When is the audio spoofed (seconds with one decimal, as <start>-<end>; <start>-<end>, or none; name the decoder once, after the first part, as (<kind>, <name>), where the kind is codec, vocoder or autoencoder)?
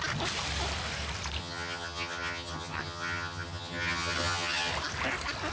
1.4-4.7 (vocoder, HiFi-GAN)